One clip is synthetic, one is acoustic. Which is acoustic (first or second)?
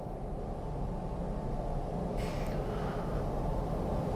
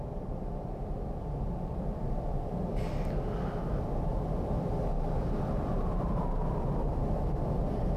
first